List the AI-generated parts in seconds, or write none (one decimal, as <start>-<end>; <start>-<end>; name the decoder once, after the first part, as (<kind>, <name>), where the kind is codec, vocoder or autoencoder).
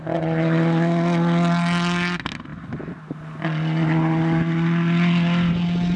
none